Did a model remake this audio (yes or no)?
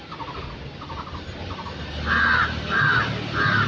no